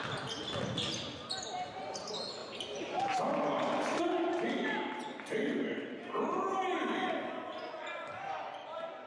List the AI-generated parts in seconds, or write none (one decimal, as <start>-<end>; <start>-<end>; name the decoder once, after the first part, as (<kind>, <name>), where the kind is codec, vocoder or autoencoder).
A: 2.4-3.3 (vocoder, BigVGAN v2); 5.1-6.6